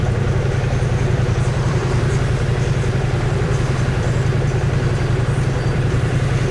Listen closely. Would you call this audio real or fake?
fake